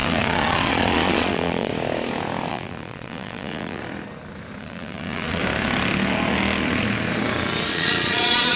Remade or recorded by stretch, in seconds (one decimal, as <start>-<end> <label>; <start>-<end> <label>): 0.0-1.7 remade; 1.7-2.5 recorded; 2.5-3.8 remade; 3.8-4.6 recorded; 4.6-5.4 remade; 5.4-7.7 recorded; 7.7-8.6 remade